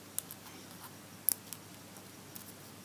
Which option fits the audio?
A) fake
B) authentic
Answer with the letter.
B